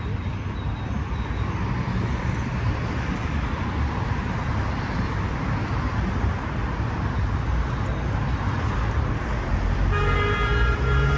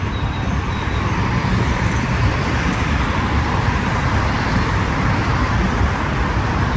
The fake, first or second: second